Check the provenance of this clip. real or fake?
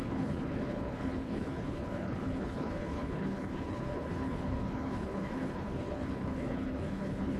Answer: fake